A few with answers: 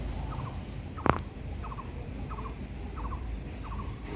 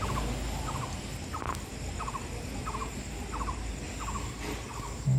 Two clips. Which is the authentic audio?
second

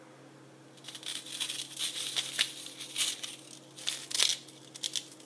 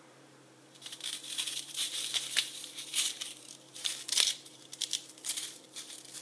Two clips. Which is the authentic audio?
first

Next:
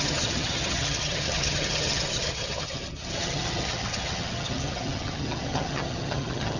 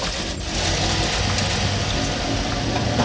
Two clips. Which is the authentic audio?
second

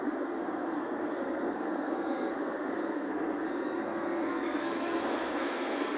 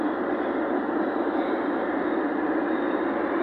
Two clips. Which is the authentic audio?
second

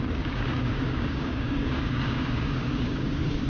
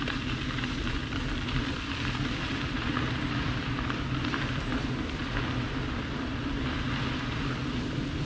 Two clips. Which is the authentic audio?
second